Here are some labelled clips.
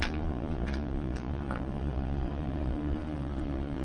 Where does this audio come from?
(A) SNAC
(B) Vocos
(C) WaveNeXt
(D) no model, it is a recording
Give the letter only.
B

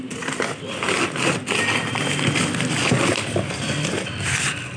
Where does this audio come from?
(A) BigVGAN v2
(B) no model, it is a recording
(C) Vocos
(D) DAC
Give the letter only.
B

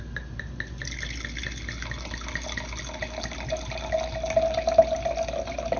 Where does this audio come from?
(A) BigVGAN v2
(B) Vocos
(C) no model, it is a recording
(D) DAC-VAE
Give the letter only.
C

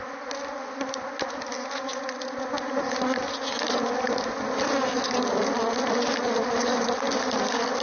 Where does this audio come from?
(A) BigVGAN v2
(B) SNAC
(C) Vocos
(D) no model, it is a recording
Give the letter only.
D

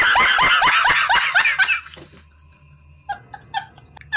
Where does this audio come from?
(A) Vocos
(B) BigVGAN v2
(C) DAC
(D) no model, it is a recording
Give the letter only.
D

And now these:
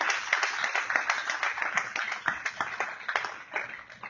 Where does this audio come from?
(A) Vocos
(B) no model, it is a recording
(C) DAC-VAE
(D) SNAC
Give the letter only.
B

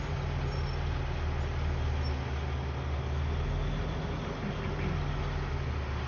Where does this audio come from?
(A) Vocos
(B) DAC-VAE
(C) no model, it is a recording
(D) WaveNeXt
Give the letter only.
C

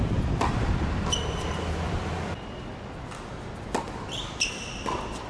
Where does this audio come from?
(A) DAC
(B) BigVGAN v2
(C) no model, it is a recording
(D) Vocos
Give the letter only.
C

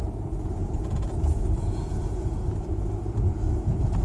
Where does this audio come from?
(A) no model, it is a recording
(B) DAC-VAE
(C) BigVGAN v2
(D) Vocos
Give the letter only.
D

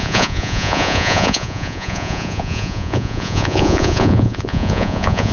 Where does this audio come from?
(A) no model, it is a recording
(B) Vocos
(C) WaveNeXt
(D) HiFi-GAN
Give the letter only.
B